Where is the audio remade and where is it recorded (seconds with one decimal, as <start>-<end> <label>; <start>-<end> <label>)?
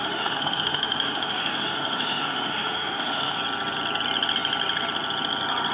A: 0.0-3.4 remade; 3.4-5.7 recorded